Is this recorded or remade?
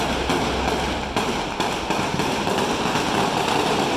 recorded